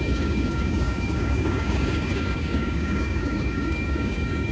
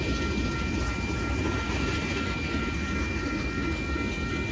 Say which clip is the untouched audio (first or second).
second